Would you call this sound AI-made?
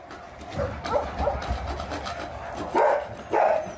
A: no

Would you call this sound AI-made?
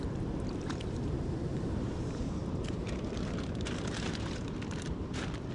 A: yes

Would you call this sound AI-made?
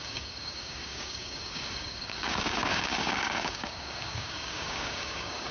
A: yes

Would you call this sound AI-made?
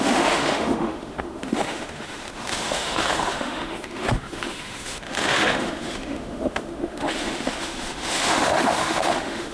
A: yes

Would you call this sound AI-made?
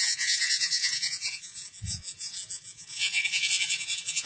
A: yes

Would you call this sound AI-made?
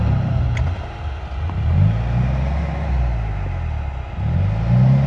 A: no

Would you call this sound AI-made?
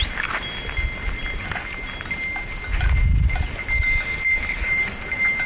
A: no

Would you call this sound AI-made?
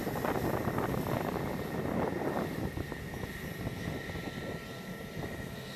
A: no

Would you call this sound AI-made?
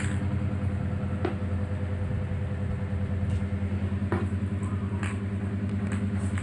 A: no